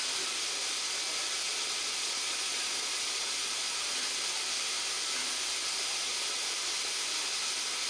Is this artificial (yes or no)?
no